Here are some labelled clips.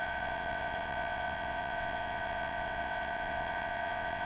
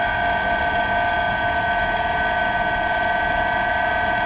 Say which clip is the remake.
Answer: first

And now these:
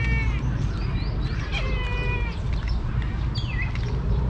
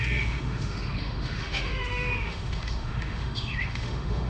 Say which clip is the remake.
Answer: second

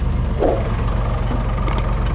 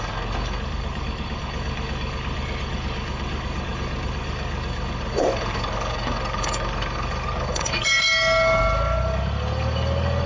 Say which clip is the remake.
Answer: second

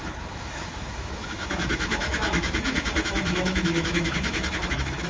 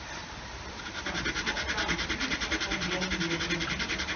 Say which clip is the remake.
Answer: first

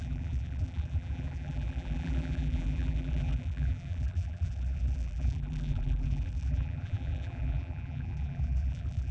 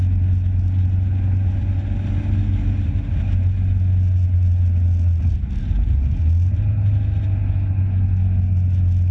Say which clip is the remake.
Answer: first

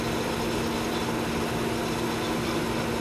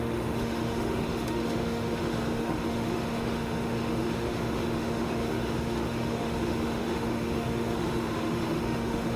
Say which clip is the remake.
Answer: second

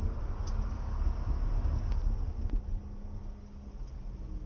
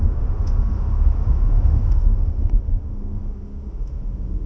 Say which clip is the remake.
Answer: second